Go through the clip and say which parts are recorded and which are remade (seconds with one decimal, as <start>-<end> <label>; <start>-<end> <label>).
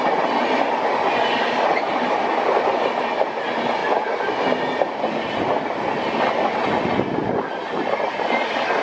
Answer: 0.0-8.8 recorded